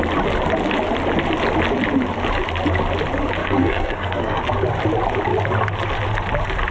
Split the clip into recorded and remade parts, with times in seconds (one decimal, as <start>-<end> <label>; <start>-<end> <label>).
0.0-3.4 recorded; 3.4-4.4 remade; 4.4-6.7 recorded